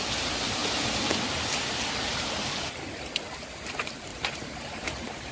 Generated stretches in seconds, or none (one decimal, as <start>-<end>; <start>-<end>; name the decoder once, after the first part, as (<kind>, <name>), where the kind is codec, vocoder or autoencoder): 0.6-1.1 (vocoder, BigVGAN v2); 4.1-5.3